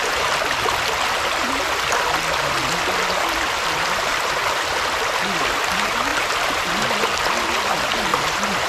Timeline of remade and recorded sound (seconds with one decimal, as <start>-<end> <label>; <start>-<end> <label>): 0.0-6.1 recorded; 6.1-6.8 remade; 6.8-8.1 recorded; 8.1-8.7 remade